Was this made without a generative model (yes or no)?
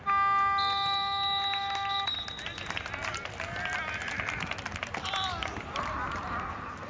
yes